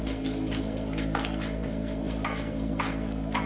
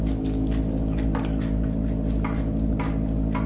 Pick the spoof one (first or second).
first